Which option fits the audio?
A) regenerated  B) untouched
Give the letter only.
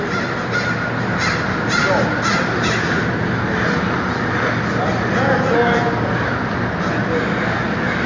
B